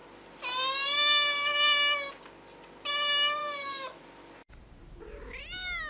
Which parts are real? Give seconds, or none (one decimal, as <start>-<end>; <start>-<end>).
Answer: 0.0-3.4; 4.0-5.9